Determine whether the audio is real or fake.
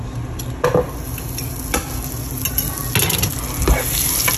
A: real